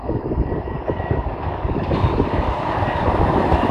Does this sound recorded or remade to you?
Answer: remade